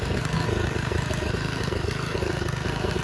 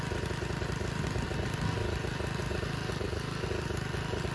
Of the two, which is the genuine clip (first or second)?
second